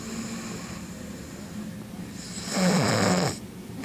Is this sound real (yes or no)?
yes